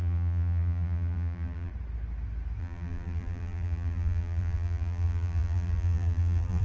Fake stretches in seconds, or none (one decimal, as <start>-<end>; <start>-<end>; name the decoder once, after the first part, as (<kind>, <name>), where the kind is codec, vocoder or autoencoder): 0.0-1.7 (vocoder, BigVGAN v2); 2.6-6.6